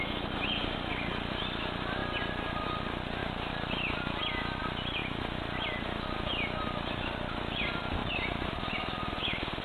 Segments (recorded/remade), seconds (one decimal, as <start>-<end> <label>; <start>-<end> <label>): 0.0-3.2 recorded; 3.2-4.2 remade; 4.2-8.0 recorded; 8.0-9.6 remade